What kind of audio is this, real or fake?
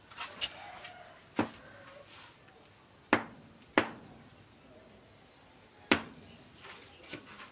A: real